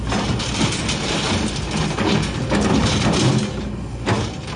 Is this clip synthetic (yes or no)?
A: no